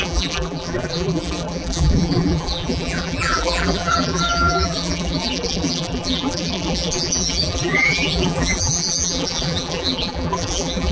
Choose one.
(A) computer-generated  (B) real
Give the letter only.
A